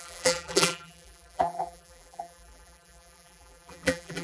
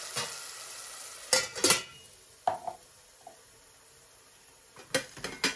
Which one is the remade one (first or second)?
first